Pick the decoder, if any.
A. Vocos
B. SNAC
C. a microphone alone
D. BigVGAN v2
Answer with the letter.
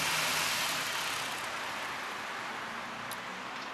D